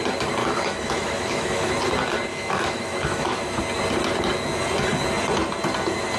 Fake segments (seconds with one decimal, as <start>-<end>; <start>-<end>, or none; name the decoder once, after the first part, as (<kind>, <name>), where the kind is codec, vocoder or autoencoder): 0.4-1.7 (autoencoder, DAC-VAE); 2.3-3.6